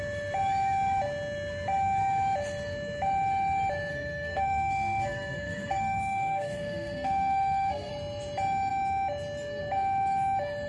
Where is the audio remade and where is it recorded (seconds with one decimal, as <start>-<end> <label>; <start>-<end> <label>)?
0.0-3.9 recorded; 3.9-7.9 remade; 7.9-10.7 recorded